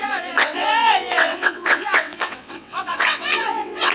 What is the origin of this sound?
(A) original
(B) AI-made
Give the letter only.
B